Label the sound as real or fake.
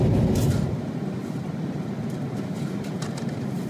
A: fake